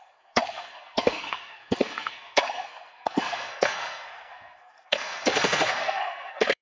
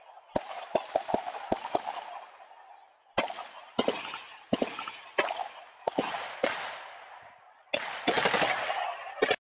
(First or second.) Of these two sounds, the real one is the second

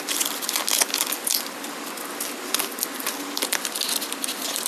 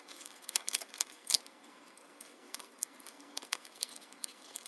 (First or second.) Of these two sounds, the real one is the first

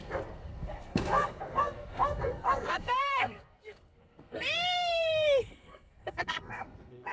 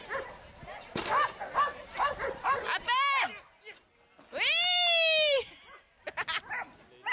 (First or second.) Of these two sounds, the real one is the second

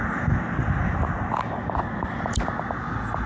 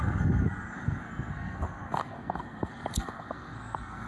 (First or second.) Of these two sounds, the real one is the first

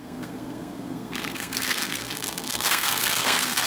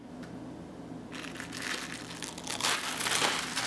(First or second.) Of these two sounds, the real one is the second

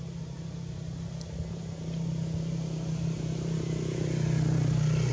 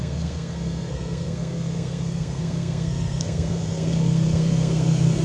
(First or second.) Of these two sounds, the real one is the first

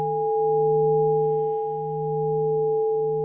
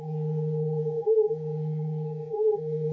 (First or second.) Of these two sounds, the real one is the first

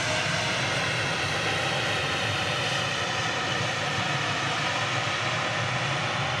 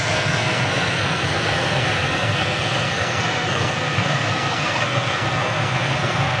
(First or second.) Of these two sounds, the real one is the first